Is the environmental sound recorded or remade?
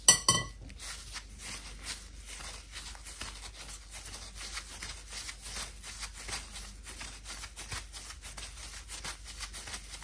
recorded